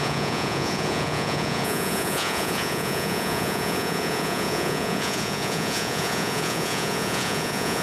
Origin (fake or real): fake